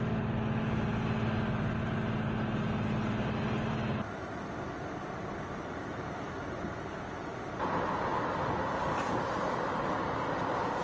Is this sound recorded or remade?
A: recorded